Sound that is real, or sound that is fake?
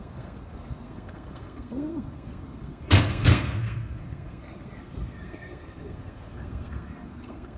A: fake